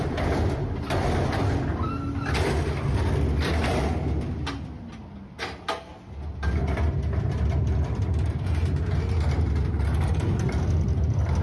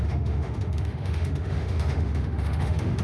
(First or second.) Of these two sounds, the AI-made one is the second